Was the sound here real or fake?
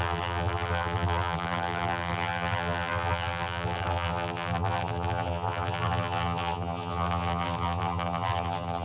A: fake